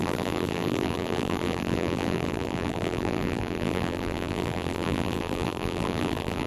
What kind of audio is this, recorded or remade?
remade